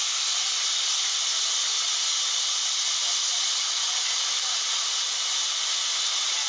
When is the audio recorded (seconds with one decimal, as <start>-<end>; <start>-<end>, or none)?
0.0-6.5